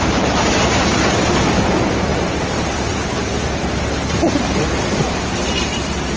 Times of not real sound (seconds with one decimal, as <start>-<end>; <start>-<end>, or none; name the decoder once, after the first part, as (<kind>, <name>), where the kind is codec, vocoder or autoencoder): 0.0-6.2 (vocoder, BigVGAN v2)